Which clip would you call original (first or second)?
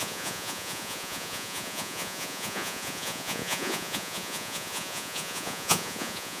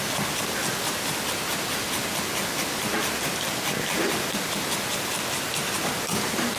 second